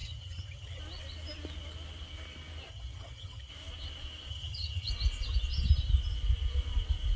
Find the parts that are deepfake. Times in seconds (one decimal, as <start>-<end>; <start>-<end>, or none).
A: 0.0-0.8; 2.7-3.5; 4.3-4.9